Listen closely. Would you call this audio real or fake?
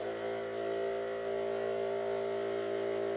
real